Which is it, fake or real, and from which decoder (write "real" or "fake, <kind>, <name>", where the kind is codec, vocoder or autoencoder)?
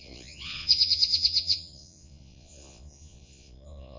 fake, vocoder, Vocos